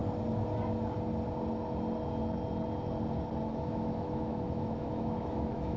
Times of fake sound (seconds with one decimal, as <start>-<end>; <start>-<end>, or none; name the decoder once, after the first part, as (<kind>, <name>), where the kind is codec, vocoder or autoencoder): 3.5-5.8 (autoencoder, DAC-VAE)